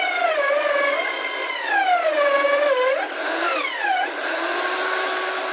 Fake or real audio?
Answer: fake